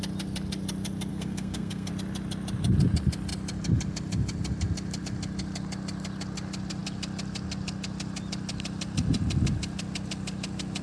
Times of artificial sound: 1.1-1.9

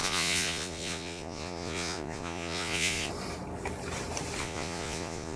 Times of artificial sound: 0.0-3.1; 4.4-5.4

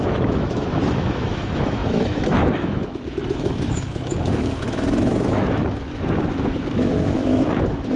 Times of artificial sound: 0.0-8.0

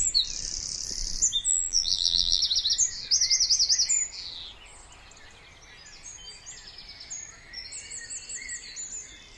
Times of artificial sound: 1.5-2.4

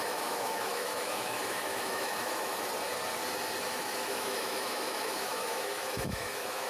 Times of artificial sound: 0.0-2.7; 3.6-6.7